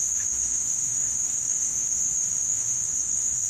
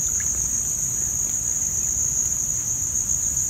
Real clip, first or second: second